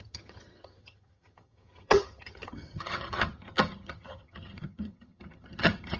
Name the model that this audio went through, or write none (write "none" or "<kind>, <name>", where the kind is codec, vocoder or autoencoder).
vocoder, HiFi-GAN